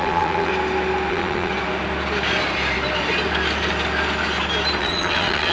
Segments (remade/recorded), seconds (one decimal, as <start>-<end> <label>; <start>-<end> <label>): 0.0-0.5 remade; 0.5-1.1 recorded; 1.1-1.5 remade; 1.5-4.8 recorded; 4.8-5.5 remade